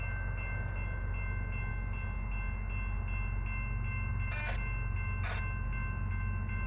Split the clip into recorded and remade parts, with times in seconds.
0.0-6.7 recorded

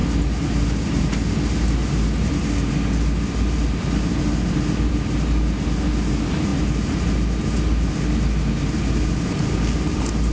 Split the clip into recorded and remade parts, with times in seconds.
0.0-10.3 recorded

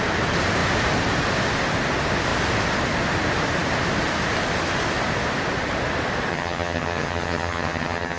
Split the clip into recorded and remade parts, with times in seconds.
0.0-6.3 recorded; 6.3-8.2 remade

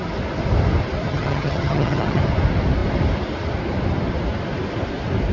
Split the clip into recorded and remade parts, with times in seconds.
0.0-1.1 recorded; 1.1-2.2 remade; 2.2-5.3 recorded

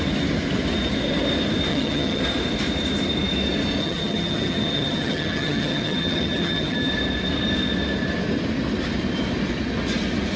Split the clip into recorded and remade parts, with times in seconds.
0.0-1.7 recorded; 1.7-2.2 remade; 2.2-3.8 recorded; 3.8-6.9 remade; 6.9-10.4 recorded